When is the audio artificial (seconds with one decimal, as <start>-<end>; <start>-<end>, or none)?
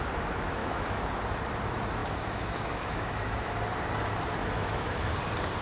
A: 0.6-1.1; 2.0-3.5; 4.4-5.1